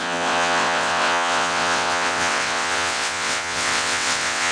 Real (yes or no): no